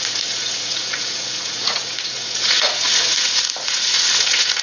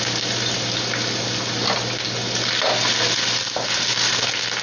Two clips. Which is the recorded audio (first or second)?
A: second